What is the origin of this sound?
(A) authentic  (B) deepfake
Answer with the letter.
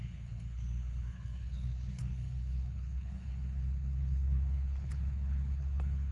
B